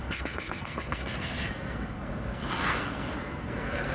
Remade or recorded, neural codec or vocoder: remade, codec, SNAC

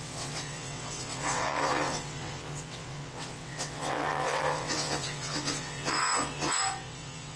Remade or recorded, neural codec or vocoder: remade, vocoder, WaveNeXt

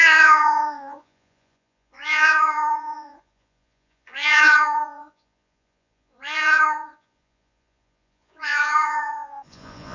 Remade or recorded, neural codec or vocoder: remade, vocoder, Vocos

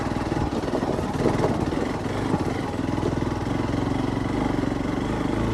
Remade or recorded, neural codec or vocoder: recorded